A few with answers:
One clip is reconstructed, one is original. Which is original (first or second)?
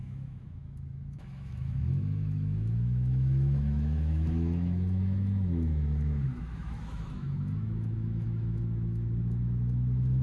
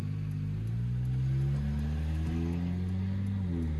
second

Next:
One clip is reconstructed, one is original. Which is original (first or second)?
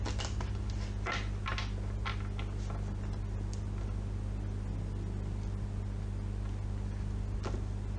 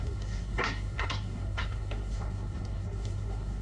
first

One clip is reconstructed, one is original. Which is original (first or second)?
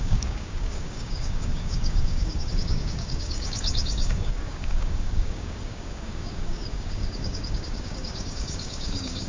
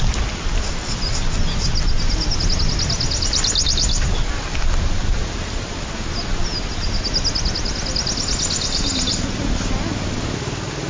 second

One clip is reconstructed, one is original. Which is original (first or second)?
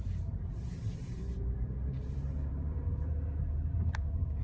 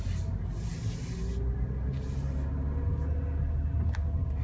second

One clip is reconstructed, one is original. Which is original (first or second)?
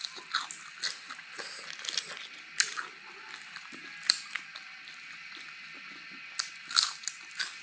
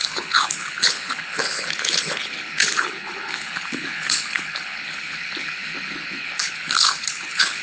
first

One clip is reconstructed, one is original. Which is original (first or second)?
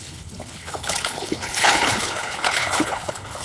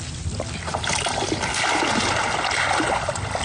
second